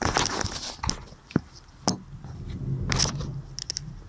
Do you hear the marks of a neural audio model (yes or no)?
no